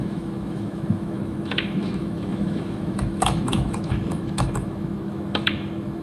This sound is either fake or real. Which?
fake